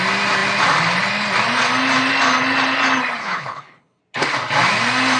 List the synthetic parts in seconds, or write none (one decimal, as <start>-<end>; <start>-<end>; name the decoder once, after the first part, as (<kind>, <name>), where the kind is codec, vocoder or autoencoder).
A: 3.2-4.0 (codec, HILCodec)